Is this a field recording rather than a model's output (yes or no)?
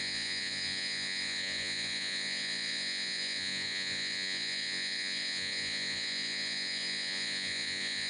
no